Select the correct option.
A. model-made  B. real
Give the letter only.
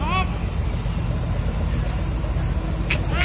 B